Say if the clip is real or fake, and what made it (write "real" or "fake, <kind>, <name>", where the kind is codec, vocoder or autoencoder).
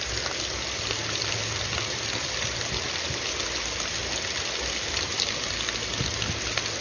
real